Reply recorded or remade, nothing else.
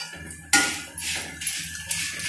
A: recorded